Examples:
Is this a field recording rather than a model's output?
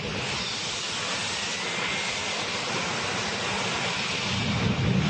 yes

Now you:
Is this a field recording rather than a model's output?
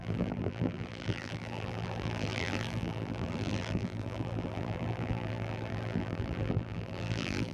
no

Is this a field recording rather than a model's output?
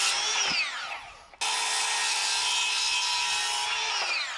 yes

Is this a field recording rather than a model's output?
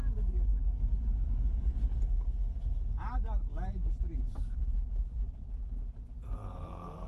yes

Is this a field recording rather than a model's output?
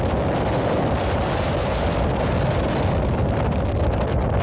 yes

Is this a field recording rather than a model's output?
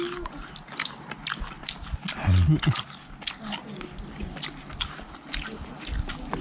yes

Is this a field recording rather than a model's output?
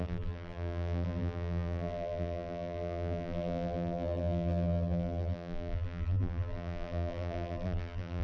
no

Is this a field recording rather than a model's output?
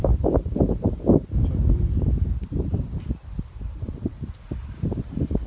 yes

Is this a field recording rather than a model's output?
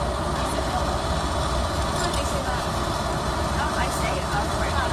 no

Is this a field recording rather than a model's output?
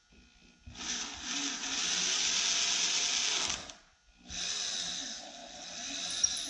yes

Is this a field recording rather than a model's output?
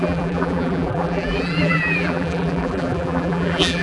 no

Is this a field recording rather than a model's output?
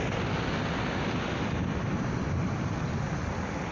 no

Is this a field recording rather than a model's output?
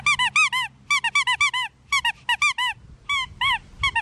yes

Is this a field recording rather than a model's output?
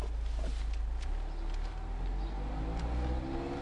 yes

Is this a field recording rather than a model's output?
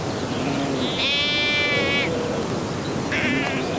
yes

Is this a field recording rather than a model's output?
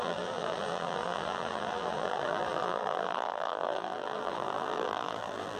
no